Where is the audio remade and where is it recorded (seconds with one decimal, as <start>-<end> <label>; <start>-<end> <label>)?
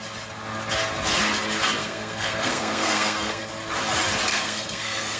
0.0-1.8 recorded; 1.8-3.5 remade; 3.5-4.3 recorded; 4.3-5.2 remade